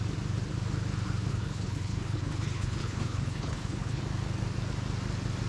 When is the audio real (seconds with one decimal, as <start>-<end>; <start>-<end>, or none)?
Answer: 0.0-1.3; 4.0-5.5